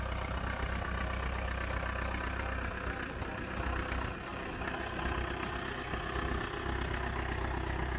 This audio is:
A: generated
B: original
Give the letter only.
B